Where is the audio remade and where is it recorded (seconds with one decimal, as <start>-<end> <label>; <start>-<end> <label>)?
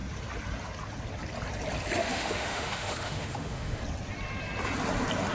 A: 0.0-2.0 recorded; 2.0-3.8 remade; 3.8-5.3 recorded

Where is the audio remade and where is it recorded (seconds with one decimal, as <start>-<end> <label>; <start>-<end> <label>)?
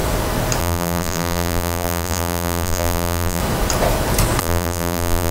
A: 0.0-0.6 recorded; 0.6-3.4 remade; 3.4-4.4 recorded; 4.4-5.3 remade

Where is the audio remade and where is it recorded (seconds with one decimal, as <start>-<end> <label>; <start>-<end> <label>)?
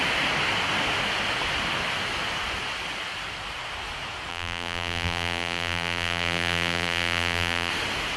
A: 0.0-4.3 recorded; 4.3-7.7 remade; 7.7-8.2 recorded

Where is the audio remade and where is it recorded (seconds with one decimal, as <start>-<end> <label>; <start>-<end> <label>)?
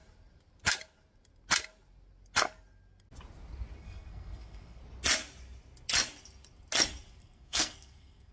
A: 0.0-3.8 recorded; 3.8-4.8 remade; 4.8-7.2 recorded; 7.2-8.3 remade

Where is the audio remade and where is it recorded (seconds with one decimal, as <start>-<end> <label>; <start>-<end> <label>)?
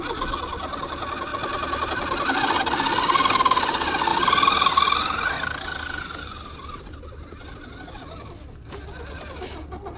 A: 0.0-1.3 recorded; 1.3-2.6 remade; 2.6-10.0 recorded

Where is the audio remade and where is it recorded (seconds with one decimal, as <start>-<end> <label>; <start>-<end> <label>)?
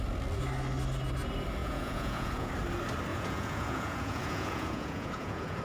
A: 0.0-1.6 recorded; 1.6-2.5 remade; 2.5-3.1 recorded; 3.1-5.6 remade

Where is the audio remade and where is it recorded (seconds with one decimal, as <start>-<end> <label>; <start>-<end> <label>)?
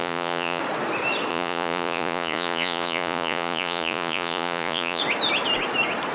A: 0.0-0.6 remade; 0.6-1.3 recorded; 1.3-5.0 remade; 5.0-6.1 recorded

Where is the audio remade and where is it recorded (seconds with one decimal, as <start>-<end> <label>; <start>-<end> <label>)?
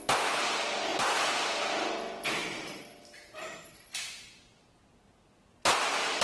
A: 0.0-0.9 recorded; 0.9-1.6 remade; 1.6-2.4 recorded; 2.4-3.6 remade; 3.6-6.2 recorded